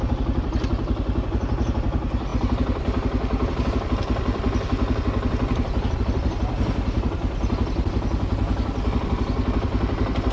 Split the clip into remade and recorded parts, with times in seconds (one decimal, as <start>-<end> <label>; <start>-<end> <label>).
0.0-10.3 recorded